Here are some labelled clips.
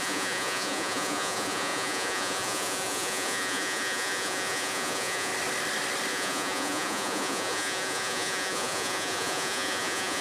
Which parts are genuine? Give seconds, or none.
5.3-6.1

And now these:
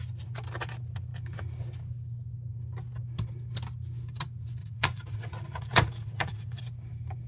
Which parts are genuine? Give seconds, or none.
0.0-4.6; 6.6-7.3

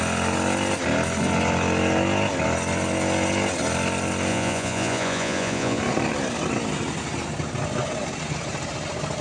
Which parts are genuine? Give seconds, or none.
0.0-4.3; 5.8-9.2

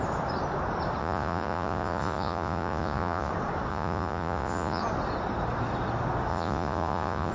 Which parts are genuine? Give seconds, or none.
0.0-1.0; 3.3-3.7; 4.8-6.3

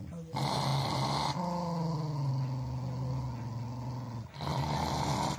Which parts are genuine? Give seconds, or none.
0.0-5.4

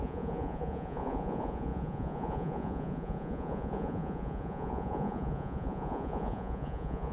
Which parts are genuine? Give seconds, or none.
none